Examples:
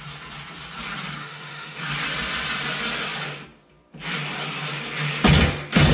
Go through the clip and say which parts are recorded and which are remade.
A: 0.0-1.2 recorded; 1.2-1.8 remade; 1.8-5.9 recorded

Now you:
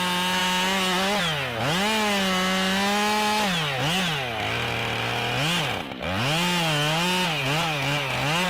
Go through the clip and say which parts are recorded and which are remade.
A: 0.0-8.5 recorded

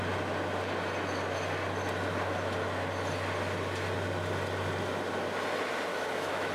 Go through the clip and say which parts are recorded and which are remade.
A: 0.0-5.9 recorded; 5.9-6.5 remade

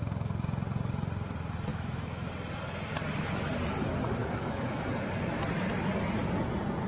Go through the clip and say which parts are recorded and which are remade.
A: 0.0-1.7 recorded; 1.7-2.3 remade; 2.3-4.2 recorded; 4.2-4.9 remade; 4.9-6.9 recorded